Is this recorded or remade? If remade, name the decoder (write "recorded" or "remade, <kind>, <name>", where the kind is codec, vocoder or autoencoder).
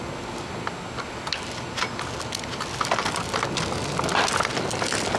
recorded